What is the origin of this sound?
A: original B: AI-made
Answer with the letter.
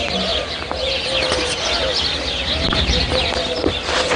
A